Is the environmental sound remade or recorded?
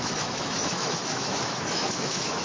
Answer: remade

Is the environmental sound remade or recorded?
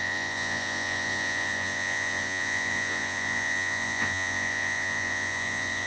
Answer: remade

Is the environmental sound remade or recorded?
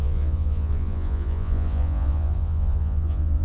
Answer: remade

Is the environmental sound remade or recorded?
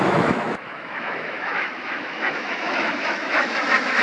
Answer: remade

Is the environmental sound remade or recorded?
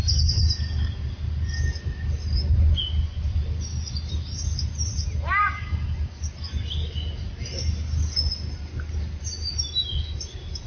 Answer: recorded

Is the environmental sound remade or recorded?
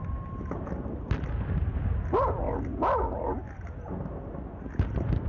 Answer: recorded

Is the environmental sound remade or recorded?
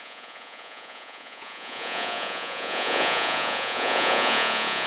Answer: remade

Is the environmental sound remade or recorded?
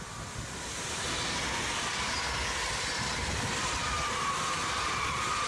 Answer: recorded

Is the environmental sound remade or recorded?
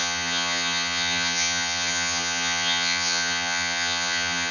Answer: remade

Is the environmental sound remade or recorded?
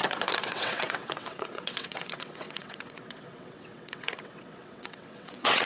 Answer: remade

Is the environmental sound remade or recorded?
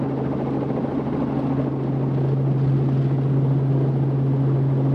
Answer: recorded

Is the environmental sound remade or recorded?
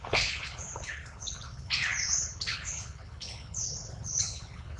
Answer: remade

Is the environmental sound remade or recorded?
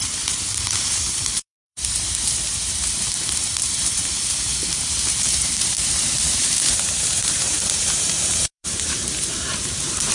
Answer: remade